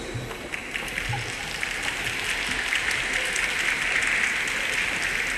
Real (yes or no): yes